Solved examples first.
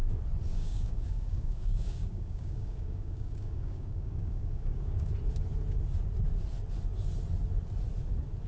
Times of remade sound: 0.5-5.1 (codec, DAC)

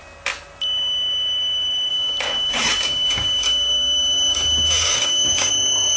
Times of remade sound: 1.9-5.5 (codec, DAC)